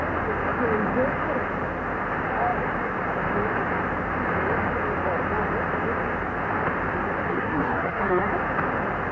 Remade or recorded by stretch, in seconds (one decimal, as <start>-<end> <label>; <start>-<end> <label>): 0.0-7.3 recorded; 7.3-8.3 remade; 8.3-9.1 recorded